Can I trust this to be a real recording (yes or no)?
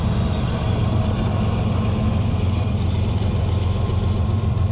no